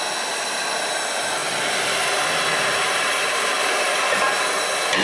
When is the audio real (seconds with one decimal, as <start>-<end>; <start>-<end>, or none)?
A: 0.0-5.0